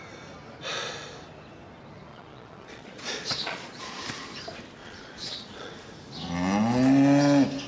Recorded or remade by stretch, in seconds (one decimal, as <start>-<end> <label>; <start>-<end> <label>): 0.0-2.1 recorded; 2.1-4.0 remade; 4.0-4.8 recorded; 4.8-5.7 remade; 5.7-7.7 recorded

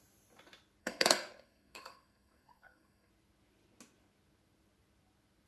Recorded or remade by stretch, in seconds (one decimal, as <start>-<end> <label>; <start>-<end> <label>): 0.0-0.8 recorded; 0.8-3.1 remade; 3.1-5.5 recorded

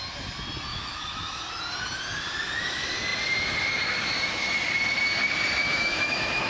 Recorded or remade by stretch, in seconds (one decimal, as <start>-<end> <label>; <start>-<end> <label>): 0.0-0.7 recorded; 0.7-1.6 remade; 1.6-5.6 recorded; 5.6-6.5 remade

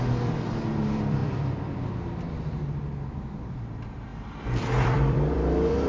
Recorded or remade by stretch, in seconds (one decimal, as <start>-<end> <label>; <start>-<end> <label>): 0.0-5.9 remade

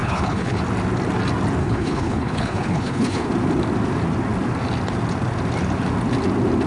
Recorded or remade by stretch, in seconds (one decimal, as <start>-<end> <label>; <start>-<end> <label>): 0.0-0.6 remade; 0.6-1.6 recorded; 1.6-3.3 remade; 3.3-6.7 recorded

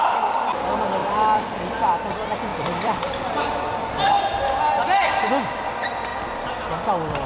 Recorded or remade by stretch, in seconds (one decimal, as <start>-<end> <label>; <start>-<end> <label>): 0.0-1.0 recorded; 1.0-1.7 remade; 1.7-2.5 recorded; 2.5-4.1 remade; 4.1-6.1 recorded; 6.1-7.3 remade

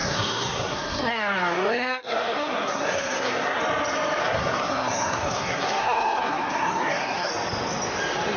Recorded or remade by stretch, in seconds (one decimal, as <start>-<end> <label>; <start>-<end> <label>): 0.0-3.6 remade; 3.6-4.2 recorded; 4.2-7.3 remade; 7.3-8.4 recorded

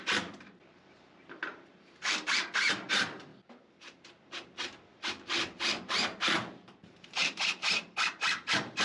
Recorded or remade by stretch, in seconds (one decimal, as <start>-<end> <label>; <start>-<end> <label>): 0.0-3.3 remade; 3.3-5.0 recorded; 5.0-8.8 remade